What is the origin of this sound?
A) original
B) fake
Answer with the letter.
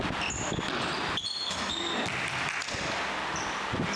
A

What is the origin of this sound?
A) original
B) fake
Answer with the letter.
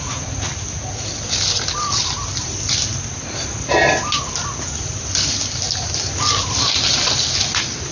A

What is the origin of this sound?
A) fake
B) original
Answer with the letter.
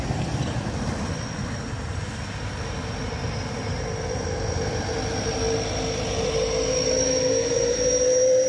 B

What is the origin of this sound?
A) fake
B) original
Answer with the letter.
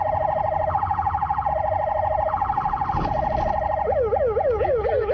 B